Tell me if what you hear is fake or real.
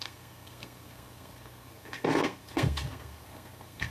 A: fake